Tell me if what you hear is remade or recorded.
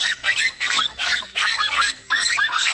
remade